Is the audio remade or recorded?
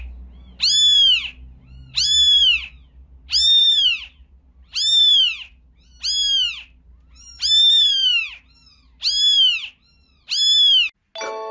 recorded